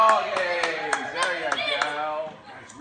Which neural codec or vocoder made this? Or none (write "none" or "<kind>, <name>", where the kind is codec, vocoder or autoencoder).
none